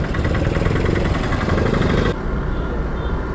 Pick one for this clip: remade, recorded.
recorded